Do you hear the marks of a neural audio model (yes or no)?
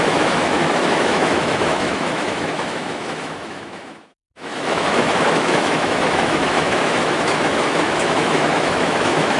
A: yes